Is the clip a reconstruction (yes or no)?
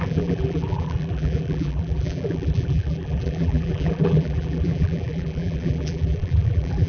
yes